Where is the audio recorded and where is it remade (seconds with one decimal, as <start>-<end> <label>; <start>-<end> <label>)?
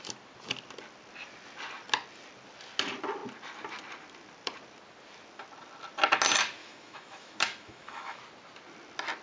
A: 0.0-6.6 recorded; 6.6-8.2 remade; 8.2-9.2 recorded